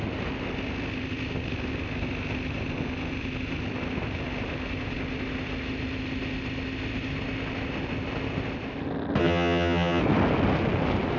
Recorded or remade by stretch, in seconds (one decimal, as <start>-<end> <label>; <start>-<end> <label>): 0.0-9.2 recorded; 9.2-10.0 remade; 10.0-11.2 recorded